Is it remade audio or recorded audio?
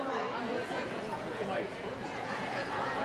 remade